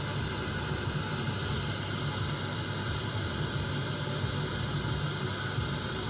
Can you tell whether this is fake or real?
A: real